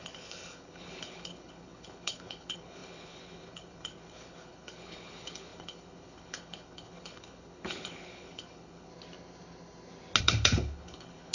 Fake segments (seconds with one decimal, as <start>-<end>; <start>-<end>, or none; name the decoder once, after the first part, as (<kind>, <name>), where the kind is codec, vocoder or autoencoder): 0.0-8.9 (codec, HILCodec); 10.2-11.3

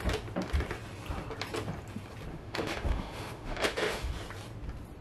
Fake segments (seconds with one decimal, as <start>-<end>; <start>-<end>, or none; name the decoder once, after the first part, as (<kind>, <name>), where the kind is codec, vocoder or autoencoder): 2.3-4.1 (autoencoder, DAC-VAE)

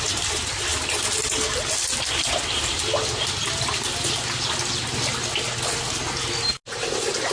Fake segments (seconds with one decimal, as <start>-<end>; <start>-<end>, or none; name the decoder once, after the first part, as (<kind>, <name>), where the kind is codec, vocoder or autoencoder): none

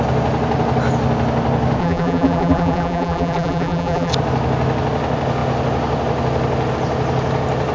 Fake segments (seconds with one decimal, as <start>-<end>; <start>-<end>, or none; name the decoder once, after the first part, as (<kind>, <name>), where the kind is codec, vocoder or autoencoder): 1.8-4.1 (vocoder, BigVGAN v2)

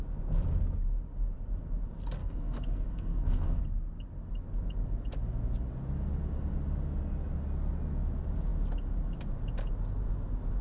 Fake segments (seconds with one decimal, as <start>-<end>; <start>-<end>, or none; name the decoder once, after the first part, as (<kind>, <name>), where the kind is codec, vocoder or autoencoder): 2.2-3.6 (codec, SNAC)

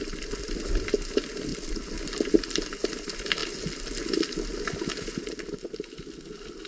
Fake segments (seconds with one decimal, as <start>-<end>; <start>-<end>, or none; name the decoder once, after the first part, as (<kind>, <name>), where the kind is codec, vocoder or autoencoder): none

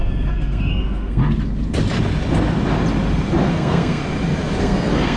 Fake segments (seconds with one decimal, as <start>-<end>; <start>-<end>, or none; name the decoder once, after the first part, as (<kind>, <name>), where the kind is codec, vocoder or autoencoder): 0.0-1.2 (codec, SNAC); 3.5-4.0; 4.6-5.2